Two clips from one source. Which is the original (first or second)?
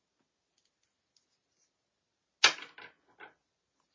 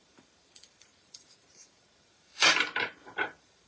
first